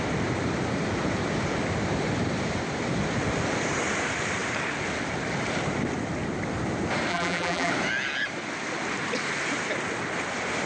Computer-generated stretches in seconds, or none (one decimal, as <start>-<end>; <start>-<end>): 7.1-7.7